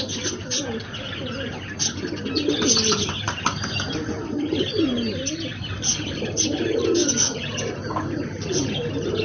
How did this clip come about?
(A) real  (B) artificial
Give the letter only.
A